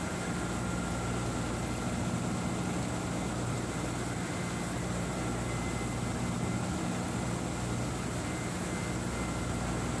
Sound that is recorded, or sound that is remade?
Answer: recorded